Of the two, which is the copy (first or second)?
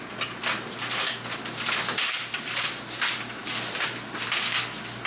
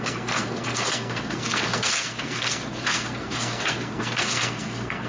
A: second